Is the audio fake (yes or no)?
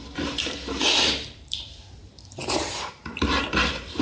yes